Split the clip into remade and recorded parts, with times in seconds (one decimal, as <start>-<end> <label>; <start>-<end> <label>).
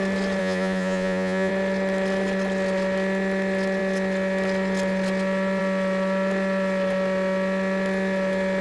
0.0-0.4 recorded; 0.4-1.5 remade; 1.5-8.6 recorded